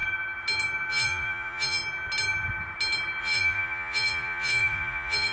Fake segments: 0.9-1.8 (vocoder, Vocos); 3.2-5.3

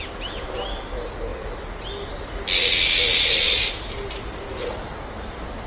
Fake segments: none

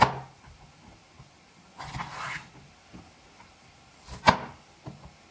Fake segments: none

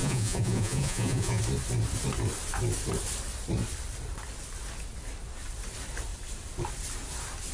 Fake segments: 0.0-1.4 (vocoder, Vocos)